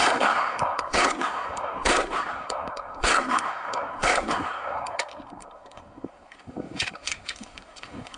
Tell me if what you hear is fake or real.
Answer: fake